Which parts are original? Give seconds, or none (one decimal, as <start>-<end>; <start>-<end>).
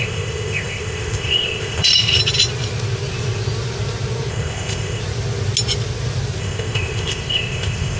2.2-4.3; 5.0-6.4